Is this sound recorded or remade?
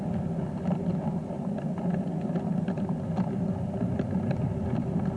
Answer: recorded